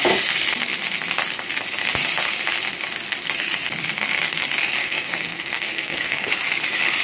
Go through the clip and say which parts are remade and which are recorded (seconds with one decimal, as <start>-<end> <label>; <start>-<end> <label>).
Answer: 0.0-4.6 recorded; 4.6-6.3 remade; 6.3-7.0 recorded